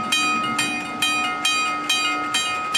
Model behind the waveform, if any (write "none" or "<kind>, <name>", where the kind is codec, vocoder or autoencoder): none